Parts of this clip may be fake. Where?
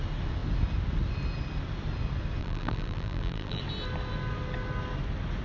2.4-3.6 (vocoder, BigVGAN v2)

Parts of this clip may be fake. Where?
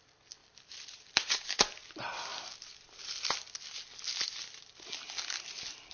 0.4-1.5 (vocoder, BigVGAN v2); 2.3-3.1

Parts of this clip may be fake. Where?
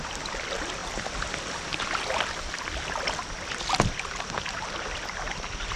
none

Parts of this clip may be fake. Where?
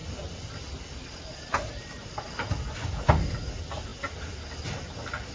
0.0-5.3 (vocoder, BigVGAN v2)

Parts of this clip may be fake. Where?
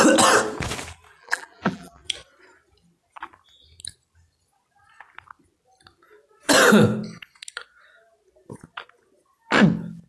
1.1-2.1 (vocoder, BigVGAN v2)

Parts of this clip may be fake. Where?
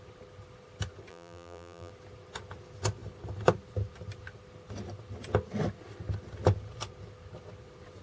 1.1-1.9 (vocoder, BigVGAN v2)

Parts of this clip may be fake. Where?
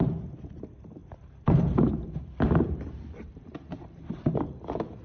1.0-4.0 (vocoder, BigVGAN v2)